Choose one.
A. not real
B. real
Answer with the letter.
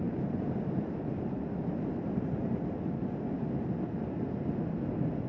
B